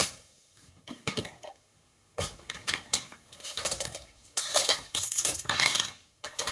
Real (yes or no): no